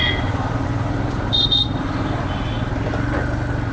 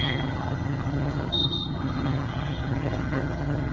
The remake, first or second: second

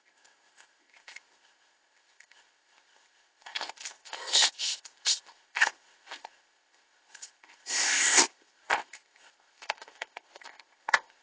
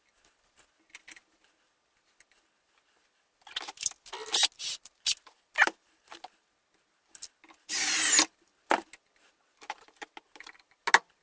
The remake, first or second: first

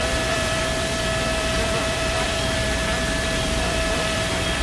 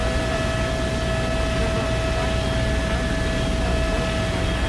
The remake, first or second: first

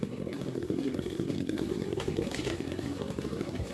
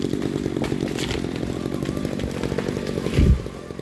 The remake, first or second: first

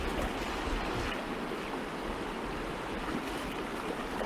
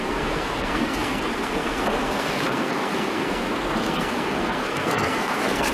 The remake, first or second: second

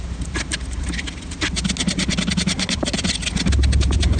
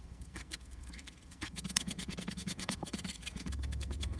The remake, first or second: second